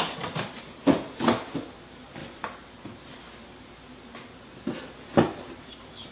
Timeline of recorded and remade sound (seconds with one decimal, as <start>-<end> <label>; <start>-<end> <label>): 0.0-6.1 recorded